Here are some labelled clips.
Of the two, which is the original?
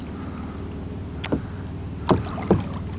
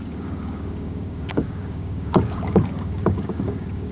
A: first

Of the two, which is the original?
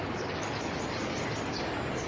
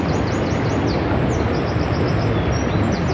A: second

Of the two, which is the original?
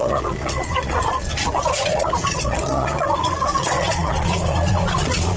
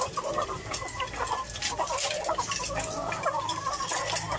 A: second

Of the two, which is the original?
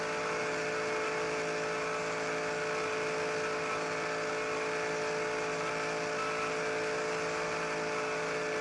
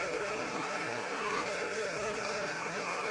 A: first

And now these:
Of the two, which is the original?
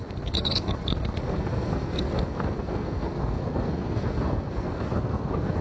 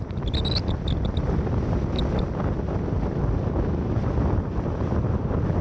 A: second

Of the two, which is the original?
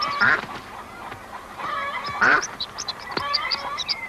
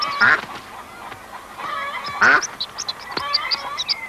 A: second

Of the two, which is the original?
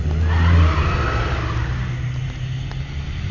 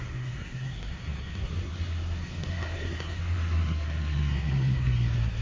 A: first